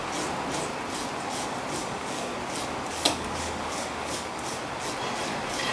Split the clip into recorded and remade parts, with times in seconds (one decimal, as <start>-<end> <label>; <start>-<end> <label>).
0.0-1.8 recorded; 1.8-2.3 remade; 2.3-2.9 recorded; 2.9-4.6 remade; 4.6-5.7 recorded